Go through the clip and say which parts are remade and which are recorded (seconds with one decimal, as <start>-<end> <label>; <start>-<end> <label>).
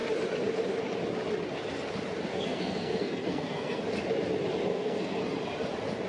0.0-2.3 recorded; 2.3-3.8 remade; 3.8-4.7 recorded; 4.7-5.2 remade; 5.2-6.1 recorded